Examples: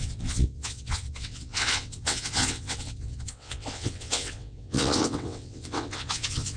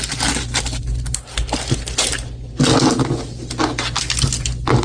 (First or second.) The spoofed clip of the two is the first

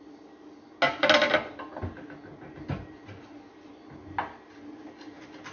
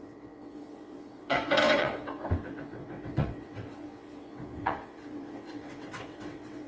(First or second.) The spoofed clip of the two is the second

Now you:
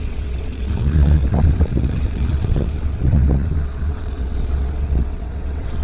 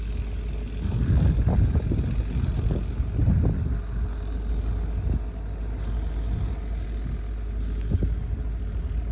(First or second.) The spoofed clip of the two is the first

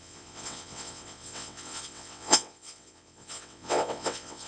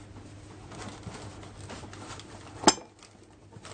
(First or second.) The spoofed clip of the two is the first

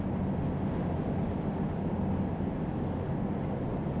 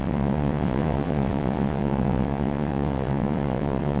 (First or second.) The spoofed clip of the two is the second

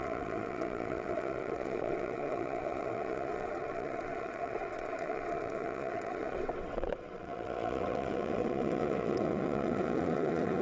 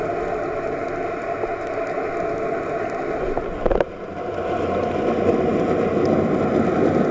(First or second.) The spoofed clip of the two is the first